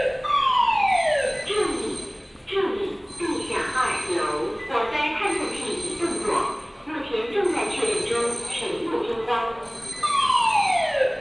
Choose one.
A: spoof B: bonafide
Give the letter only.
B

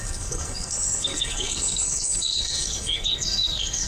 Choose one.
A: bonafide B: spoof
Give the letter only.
B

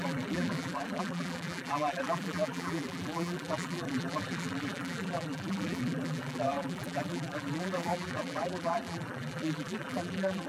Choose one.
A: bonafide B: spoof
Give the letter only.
B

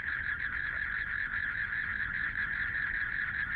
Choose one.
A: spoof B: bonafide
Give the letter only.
A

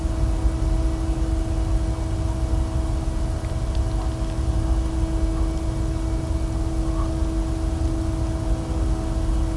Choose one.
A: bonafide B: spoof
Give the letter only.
A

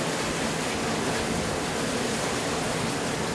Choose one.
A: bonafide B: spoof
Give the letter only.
A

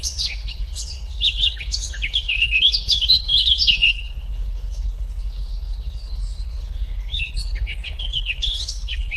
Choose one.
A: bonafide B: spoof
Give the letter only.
B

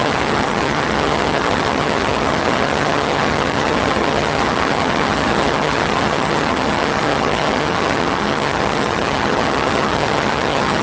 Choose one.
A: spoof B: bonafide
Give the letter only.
A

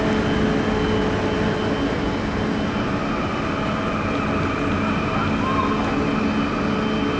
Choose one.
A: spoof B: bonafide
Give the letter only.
B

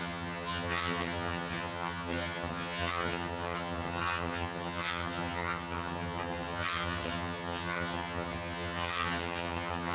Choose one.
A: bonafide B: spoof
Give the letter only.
B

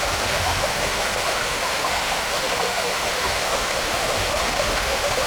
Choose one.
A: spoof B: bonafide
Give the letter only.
A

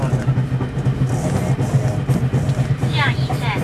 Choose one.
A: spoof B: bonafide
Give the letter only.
B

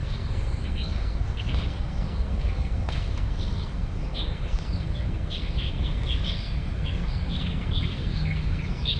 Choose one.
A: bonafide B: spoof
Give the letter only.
B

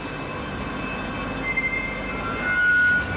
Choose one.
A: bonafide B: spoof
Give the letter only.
A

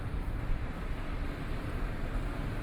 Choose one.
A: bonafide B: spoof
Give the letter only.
A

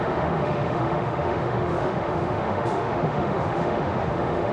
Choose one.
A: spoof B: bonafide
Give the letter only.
A